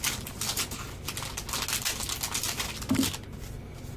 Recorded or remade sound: recorded